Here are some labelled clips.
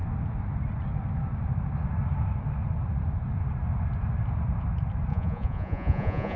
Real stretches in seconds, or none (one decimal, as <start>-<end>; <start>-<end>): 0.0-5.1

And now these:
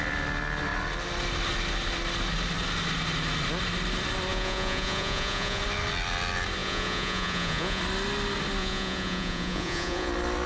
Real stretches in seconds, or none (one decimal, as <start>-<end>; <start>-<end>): 0.0-4.3; 5.6-6.6; 7.8-8.6; 10.1-10.5

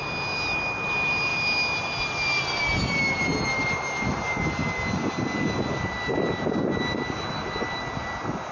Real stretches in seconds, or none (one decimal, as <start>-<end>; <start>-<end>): 0.0-8.5